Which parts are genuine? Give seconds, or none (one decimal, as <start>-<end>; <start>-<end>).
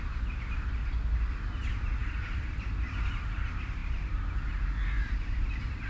0.0-5.9